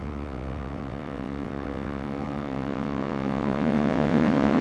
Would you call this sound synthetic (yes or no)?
yes